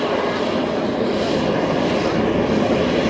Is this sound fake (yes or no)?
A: no